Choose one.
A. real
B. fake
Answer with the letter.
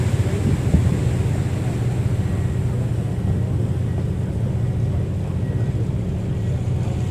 A